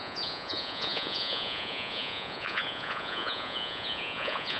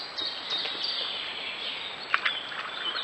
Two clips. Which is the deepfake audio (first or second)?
first